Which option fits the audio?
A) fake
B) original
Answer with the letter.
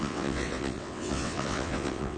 A